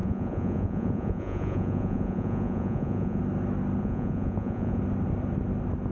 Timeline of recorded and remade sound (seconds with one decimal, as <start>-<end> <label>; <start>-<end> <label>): 0.0-3.2 remade; 3.2-3.8 recorded; 3.8-4.8 remade; 4.8-5.9 recorded